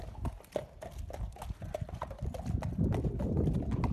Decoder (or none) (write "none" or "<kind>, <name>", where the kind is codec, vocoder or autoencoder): none